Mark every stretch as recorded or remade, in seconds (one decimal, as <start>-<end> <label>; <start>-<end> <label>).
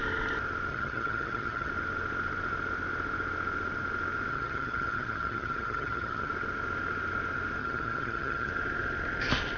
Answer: 0.0-0.7 recorded; 0.7-1.7 remade; 1.7-4.3 recorded; 4.3-6.3 remade; 6.3-7.6 recorded; 7.6-8.5 remade; 8.5-9.6 recorded